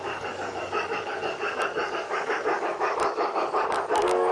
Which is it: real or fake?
fake